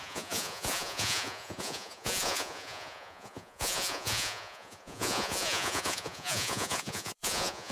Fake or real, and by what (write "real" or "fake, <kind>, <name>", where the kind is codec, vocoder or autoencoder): fake, vocoder, Vocos